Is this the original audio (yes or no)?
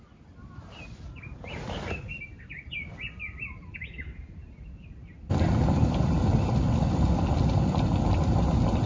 yes